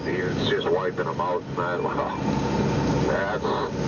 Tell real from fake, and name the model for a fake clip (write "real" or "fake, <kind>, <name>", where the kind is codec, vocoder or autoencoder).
real